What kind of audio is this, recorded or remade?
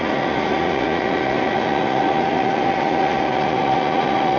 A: remade